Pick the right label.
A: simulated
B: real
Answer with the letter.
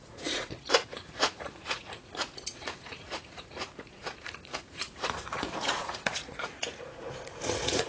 A